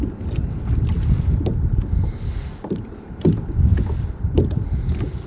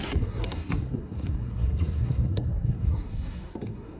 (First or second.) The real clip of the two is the first